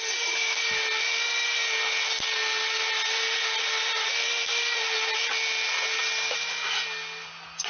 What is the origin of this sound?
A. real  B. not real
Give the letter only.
A